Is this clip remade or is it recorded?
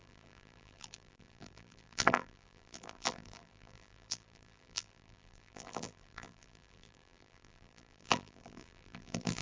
remade